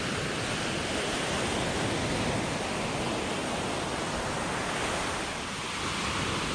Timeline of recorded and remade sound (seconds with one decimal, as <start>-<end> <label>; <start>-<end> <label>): 0.0-6.5 recorded

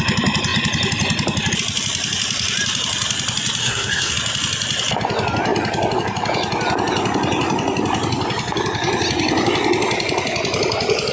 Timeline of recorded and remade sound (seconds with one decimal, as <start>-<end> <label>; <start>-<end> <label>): 0.0-3.6 recorded; 3.6-4.1 remade; 4.1-11.1 recorded